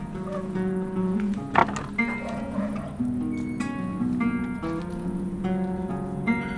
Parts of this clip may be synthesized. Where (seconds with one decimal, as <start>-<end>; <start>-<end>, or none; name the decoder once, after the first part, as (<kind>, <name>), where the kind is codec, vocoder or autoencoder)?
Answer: 0.0-1.6 (vocoder, Vocos); 2.2-2.7; 4.9-6.6